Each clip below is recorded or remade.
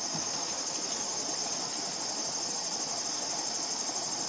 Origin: recorded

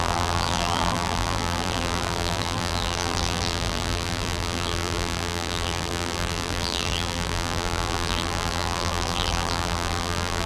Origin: remade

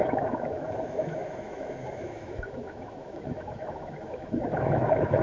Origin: remade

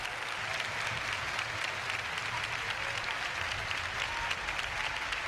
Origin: recorded